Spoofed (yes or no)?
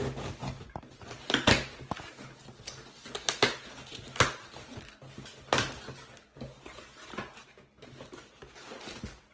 no